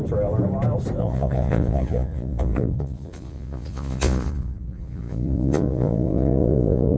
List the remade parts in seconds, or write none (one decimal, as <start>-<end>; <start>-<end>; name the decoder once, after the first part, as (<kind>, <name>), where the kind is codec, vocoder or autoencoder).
1.0-7.0 (vocoder, Vocos)